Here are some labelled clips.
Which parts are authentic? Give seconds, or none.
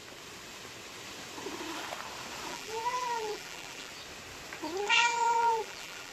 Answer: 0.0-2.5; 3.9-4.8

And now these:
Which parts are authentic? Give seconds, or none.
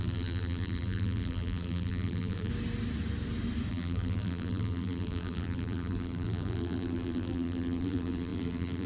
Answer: 2.5-3.7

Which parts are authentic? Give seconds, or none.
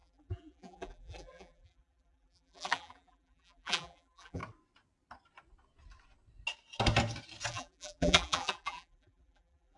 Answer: 4.4-7.5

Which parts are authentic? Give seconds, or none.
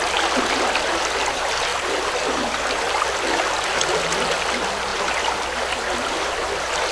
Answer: 0.0-1.7; 3.5-6.9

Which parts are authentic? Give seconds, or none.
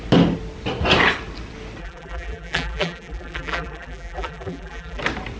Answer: 0.0-1.8; 5.0-5.4